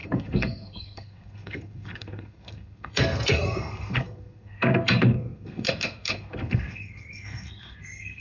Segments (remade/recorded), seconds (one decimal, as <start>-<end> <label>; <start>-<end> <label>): 0.0-8.2 remade